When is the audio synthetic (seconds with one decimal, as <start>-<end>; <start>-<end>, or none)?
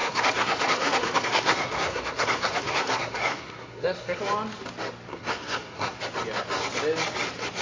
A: 0.0-4.2; 5.1-6.0